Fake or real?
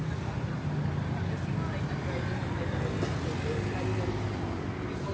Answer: real